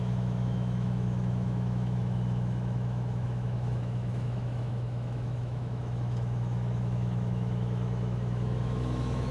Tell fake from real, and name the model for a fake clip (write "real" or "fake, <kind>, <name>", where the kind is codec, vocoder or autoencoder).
fake, autoencoder, DAC-VAE